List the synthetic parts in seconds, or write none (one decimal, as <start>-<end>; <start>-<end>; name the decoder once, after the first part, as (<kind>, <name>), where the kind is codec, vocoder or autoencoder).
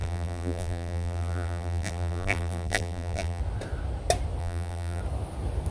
0.0-3.4 (vocoder, BigVGAN v2); 4.4-5.0